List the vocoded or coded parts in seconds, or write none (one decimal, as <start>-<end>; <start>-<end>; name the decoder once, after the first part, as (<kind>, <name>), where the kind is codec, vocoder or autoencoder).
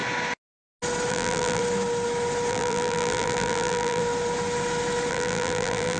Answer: 1.1-1.6 (vocoder, BigVGAN v2); 2.5-4.0; 5.1-6.0